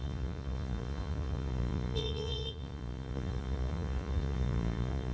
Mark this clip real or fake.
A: fake